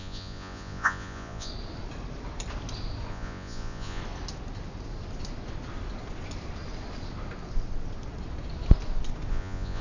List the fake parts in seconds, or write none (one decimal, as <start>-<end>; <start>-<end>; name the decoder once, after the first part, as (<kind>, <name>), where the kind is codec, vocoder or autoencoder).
0.0-1.5 (vocoder, Vocos); 3.1-4.0; 9.3-9.8